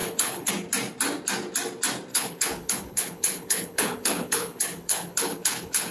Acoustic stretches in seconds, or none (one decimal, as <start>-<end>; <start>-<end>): 0.5-2.1